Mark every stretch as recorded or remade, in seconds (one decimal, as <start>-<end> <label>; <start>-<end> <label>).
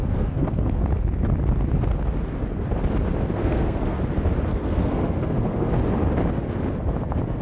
0.0-0.8 remade; 0.8-3.4 recorded; 3.4-4.0 remade; 4.0-4.5 recorded; 4.5-5.7 remade; 5.7-7.4 recorded